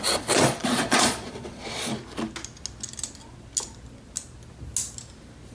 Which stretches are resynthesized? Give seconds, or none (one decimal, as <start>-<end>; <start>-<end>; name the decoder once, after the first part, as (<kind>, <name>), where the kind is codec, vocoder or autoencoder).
0.0-1.9 (vocoder, Vocos)